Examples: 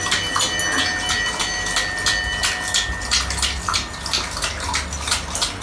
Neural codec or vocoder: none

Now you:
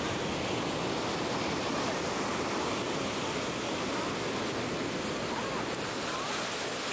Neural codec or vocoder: none